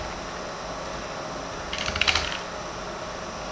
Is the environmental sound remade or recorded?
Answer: recorded